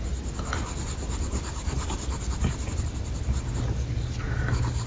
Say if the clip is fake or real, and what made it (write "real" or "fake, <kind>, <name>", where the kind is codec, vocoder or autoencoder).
real